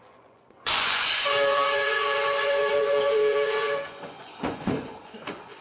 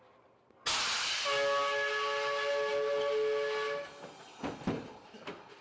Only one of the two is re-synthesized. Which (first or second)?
first